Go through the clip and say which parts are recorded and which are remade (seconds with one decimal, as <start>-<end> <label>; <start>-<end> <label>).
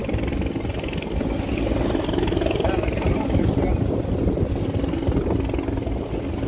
0.0-6.5 recorded